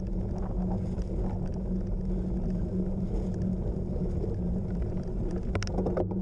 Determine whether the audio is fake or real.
real